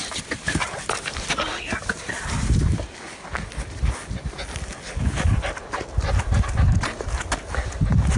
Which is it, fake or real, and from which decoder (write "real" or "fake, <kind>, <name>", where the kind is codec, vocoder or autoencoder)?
real